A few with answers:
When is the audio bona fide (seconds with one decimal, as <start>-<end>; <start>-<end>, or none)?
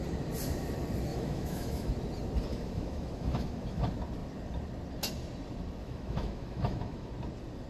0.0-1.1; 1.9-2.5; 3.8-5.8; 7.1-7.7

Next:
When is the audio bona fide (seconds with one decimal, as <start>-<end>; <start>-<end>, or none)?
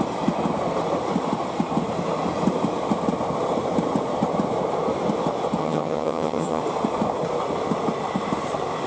0.0-5.6; 6.6-8.9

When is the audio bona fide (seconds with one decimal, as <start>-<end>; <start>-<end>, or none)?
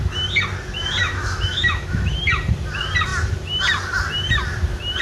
0.0-1.0; 2.1-5.0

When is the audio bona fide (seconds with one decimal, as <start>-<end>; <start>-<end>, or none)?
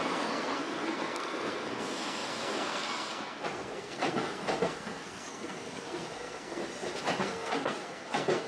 6.6-7.2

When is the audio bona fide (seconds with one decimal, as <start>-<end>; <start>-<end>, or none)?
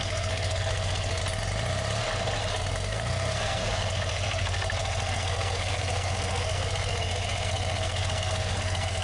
1.2-2.4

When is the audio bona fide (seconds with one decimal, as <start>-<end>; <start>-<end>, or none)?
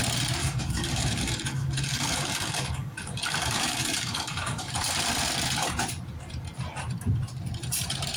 0.0-0.4; 4.7-8.2